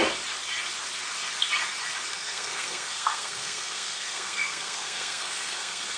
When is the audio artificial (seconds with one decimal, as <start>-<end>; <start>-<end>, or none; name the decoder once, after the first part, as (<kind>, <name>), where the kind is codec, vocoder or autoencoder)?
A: 2.1-6.0 (codec, SNAC)